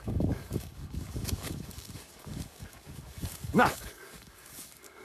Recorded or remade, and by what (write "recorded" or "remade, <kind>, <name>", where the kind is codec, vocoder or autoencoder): remade, codec, DAC